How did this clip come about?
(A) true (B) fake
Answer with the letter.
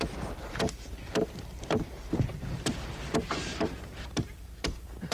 B